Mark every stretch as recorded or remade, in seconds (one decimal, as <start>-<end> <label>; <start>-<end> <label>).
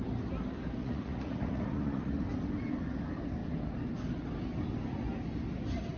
0.0-0.8 recorded; 0.8-2.2 remade; 2.2-6.0 recorded